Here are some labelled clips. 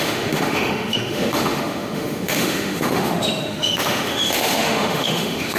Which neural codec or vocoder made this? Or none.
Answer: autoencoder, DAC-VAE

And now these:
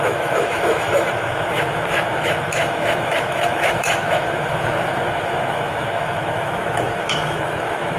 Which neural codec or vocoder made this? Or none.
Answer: autoencoder, DAC-VAE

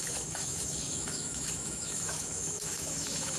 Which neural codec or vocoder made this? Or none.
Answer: autoencoder, DAC-VAE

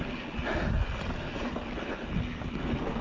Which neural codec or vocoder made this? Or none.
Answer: none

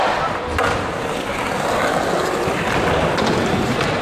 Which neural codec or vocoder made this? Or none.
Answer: none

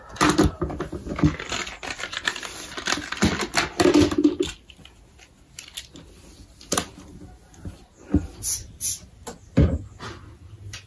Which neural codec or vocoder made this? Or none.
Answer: none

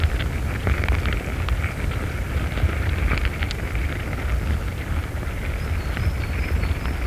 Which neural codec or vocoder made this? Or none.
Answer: none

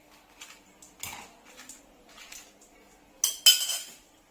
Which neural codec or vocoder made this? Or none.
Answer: none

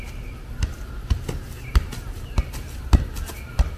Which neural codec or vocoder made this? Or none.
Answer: none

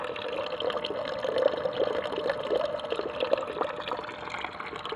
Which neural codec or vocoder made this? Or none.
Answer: none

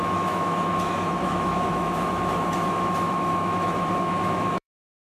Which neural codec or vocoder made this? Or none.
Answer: autoencoder, DAC-VAE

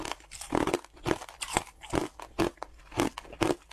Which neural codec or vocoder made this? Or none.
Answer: none